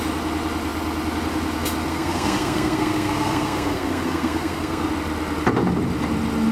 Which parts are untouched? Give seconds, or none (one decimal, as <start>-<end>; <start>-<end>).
0.0-1.9; 4.9-6.5

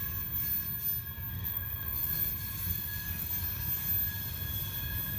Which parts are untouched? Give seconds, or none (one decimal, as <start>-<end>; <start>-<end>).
0.0-1.3; 2.3-2.7; 3.3-5.2

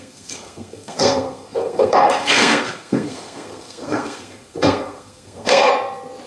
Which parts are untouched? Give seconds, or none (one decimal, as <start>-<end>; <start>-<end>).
5.7-6.3

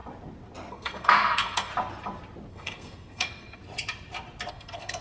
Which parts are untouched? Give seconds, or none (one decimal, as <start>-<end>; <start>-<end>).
0.0-0.7; 1.7-2.5; 3.6-4.5

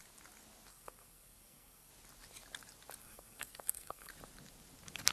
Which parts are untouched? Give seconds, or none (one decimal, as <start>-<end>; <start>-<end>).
0.0-0.7; 1.9-3.0; 4.1-5.1